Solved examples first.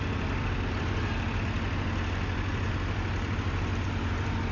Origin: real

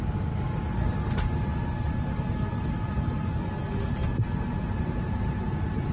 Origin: real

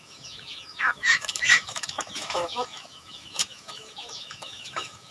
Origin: fake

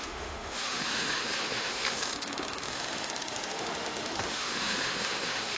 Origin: fake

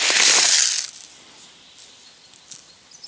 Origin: real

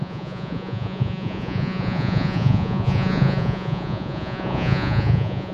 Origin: fake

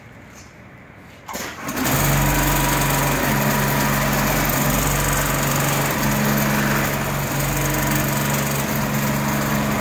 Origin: real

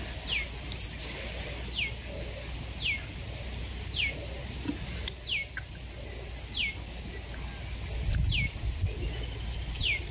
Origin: real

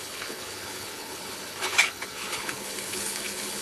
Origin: fake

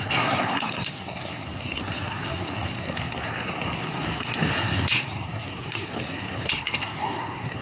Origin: fake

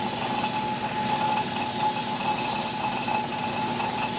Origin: real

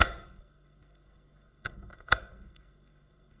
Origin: fake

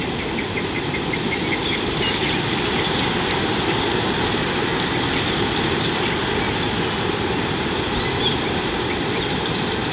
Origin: real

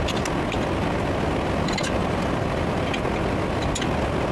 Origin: real